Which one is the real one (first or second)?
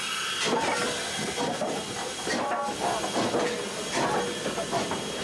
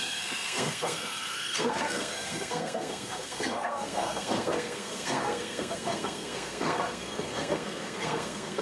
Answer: first